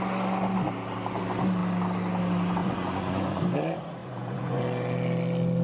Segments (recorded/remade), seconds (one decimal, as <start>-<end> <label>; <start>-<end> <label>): 0.0-2.6 recorded; 2.6-3.4 remade; 3.4-4.0 recorded; 4.0-4.6 remade; 4.6-5.6 recorded